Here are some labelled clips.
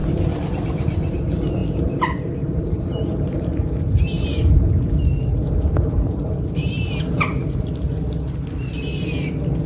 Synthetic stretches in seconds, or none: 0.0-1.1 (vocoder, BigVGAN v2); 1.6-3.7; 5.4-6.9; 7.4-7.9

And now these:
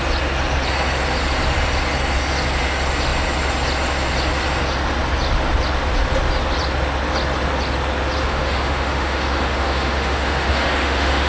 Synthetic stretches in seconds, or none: 8.2-11.3 (autoencoder, DAC-VAE)

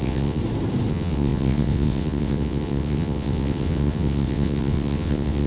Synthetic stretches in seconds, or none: 0.0-0.4 (vocoder, WaveNeXt); 0.9-5.5